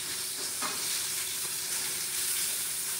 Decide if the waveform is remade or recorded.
remade